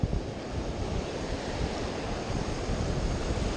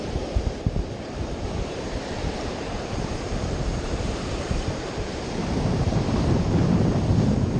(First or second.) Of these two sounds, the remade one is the second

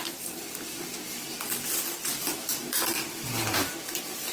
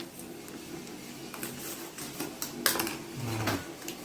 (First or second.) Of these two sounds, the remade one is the first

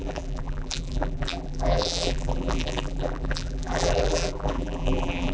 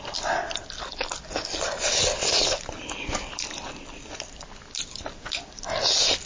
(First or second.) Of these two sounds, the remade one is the first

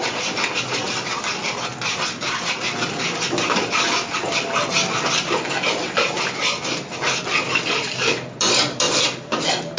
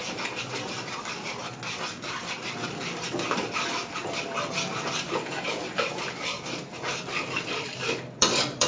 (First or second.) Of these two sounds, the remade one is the second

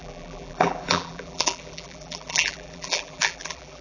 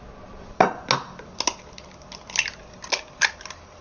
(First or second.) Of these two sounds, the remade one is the first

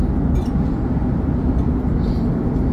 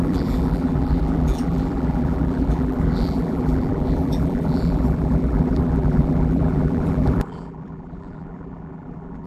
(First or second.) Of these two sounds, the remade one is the second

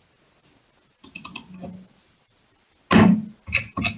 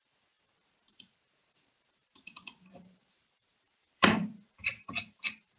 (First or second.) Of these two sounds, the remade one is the second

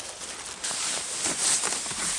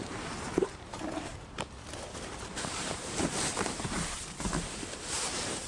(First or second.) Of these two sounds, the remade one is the second